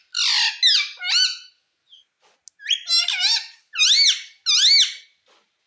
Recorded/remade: recorded